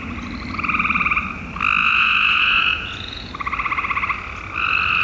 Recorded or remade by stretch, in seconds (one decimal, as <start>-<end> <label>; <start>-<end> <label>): 0.0-1.8 recorded; 1.8-3.3 remade; 3.3-5.0 recorded